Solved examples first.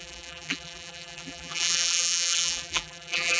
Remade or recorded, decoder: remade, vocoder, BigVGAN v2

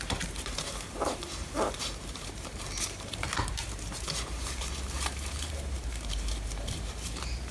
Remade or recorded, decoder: remade, vocoder, BigVGAN v2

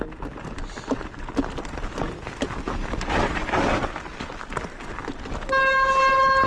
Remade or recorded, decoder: recorded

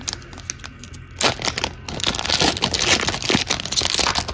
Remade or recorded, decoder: recorded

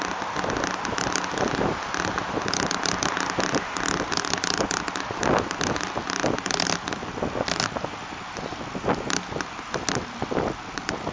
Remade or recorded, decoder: recorded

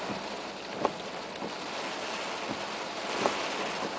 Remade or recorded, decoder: recorded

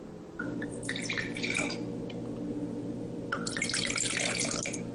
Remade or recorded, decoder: recorded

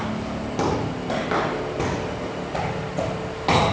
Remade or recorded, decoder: recorded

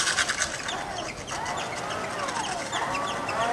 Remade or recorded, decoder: recorded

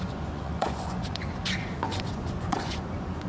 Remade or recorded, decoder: remade, vocoder, Vocos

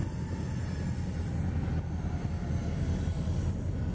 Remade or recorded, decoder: recorded